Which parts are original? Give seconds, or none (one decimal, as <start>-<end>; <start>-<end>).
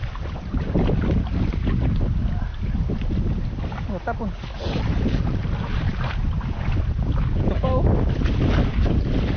0.0-9.4